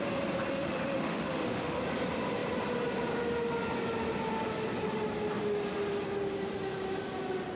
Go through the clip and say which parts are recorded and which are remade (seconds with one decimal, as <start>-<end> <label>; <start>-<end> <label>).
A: 0.0-0.5 recorded; 0.5-1.8 remade; 1.8-7.6 recorded